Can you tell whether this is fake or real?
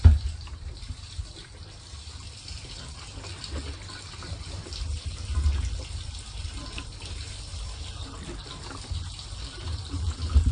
real